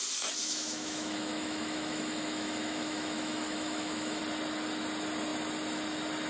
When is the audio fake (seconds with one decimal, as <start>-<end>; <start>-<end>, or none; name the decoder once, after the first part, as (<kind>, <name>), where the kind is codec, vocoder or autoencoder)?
0.4-4.2 (autoencoder, DAC-VAE)